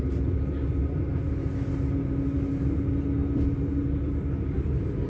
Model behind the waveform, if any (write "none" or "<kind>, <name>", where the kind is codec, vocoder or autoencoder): none